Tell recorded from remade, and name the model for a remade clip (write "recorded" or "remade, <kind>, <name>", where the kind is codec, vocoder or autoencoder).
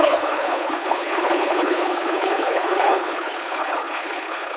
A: remade, codec, HILCodec